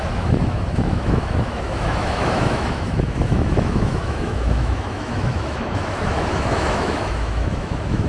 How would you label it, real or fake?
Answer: fake